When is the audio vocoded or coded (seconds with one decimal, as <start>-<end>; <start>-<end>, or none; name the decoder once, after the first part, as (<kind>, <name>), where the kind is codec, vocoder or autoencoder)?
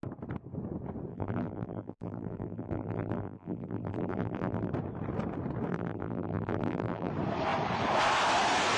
1.1-4.7 (vocoder, BigVGAN v2); 5.7-7.1